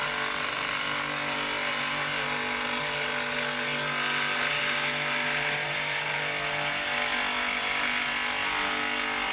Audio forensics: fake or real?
real